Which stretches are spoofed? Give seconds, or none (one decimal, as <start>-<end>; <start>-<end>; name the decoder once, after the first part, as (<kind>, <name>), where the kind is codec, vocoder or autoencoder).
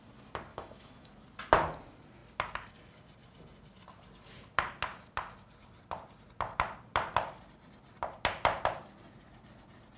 0.5-1.1 (autoencoder, DAC-VAE)